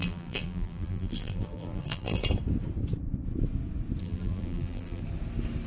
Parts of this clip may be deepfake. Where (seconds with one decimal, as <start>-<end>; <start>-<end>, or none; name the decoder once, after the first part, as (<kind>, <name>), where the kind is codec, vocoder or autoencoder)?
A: 0.0-2.2 (vocoder, BigVGAN v2); 4.0-5.0